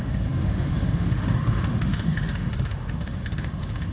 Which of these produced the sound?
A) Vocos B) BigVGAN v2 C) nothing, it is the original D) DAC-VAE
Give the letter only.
D